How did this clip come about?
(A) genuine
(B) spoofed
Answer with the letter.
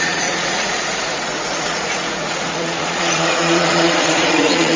B